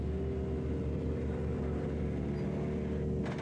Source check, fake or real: real